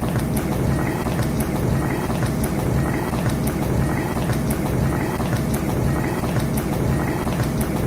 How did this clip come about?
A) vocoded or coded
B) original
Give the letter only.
B